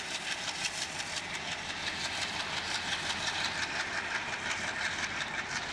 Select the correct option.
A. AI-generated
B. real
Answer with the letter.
A